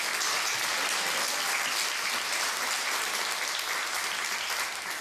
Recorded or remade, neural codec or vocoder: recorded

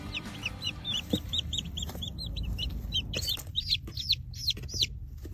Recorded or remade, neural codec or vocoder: remade, vocoder, BigVGAN v2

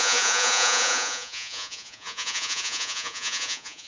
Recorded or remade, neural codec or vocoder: remade, vocoder, Vocos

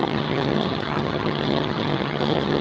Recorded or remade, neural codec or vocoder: remade, vocoder, HiFi-GAN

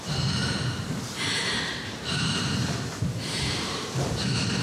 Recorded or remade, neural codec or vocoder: remade, vocoder, BigVGAN v2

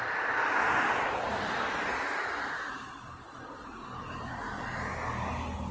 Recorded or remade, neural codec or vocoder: recorded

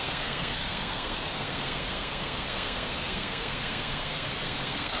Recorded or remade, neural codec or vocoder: remade, codec, SNAC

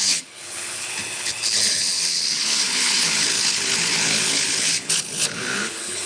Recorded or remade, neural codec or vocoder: remade, codec, HILCodec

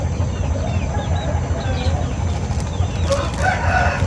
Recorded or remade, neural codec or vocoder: recorded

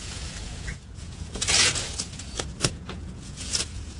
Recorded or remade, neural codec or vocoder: remade, vocoder, Vocos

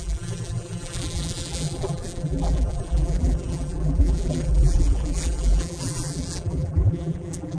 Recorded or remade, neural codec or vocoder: remade, vocoder, BigVGAN v2